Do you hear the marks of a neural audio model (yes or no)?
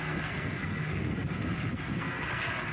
yes